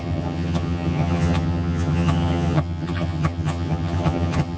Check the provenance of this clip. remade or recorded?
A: remade